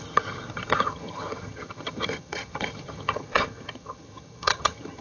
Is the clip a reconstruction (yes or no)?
yes